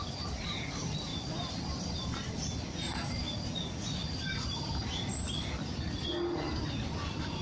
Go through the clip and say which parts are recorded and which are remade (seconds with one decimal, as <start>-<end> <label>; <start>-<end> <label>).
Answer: 0.0-7.4 recorded